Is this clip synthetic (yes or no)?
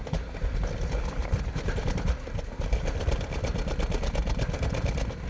no